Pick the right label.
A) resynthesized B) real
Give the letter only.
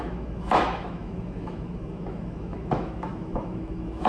A